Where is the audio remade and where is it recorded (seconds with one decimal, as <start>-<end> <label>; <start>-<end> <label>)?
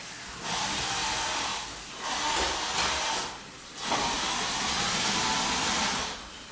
0.0-6.5 recorded